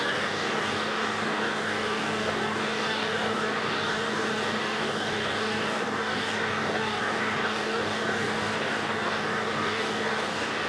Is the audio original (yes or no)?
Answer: no